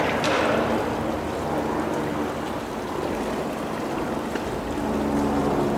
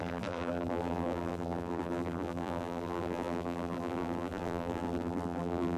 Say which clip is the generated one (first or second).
second